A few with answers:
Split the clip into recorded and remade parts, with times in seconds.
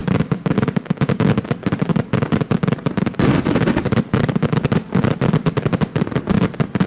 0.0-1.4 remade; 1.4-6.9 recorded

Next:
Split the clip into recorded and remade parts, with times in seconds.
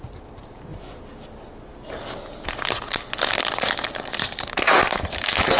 0.0-0.7 remade; 0.7-4.1 recorded; 4.1-5.6 remade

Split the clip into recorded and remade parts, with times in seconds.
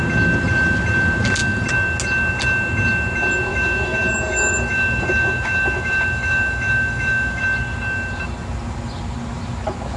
0.0-3.5 recorded; 3.5-7.4 remade; 7.4-10.0 recorded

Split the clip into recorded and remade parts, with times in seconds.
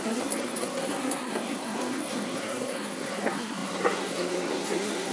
0.0-5.1 remade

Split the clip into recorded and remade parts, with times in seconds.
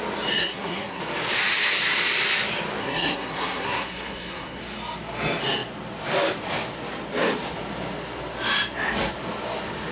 0.0-0.4 recorded; 0.4-1.0 remade; 1.0-2.8 recorded; 2.8-4.6 remade; 4.6-9.9 recorded